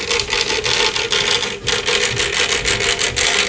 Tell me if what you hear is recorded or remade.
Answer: recorded